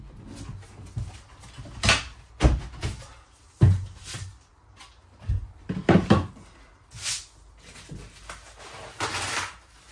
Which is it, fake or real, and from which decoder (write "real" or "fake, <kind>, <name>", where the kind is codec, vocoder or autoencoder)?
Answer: real